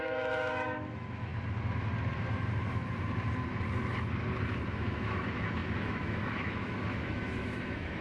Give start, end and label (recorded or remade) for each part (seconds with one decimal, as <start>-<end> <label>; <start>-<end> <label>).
0.0-1.3 remade; 1.3-4.7 recorded; 4.7-8.0 remade